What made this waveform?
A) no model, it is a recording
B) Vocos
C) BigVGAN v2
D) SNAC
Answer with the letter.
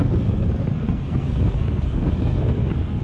D